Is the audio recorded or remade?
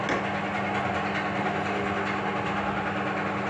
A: recorded